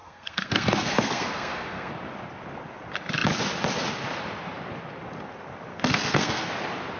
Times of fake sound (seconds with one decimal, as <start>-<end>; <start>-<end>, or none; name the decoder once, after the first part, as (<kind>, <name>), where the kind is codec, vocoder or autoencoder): 0.0-1.9 (codec, SNAC); 5.7-6.5

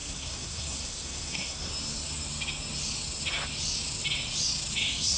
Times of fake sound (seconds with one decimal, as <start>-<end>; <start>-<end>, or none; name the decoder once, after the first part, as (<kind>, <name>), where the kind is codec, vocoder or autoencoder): 0.0-1.7 (codec, SNAC); 4.8-5.2